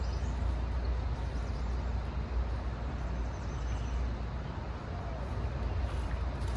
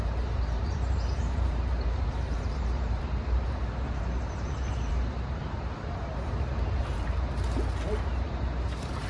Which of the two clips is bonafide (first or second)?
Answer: first